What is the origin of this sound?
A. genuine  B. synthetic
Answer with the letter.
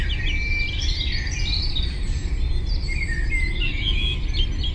A